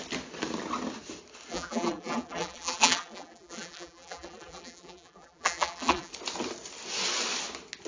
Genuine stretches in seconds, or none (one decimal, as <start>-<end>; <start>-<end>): 0.0-1.5; 6.1-7.9